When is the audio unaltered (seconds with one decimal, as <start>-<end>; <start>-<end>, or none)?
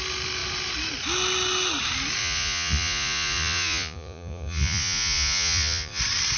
0.0-2.2; 6.0-6.4